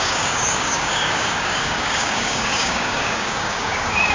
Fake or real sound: fake